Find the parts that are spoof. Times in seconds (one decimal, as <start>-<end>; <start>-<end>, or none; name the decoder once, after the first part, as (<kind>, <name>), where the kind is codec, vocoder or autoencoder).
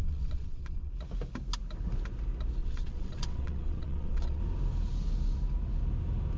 0.0-0.9 (vocoder, WaveNeXt); 2.6-4.4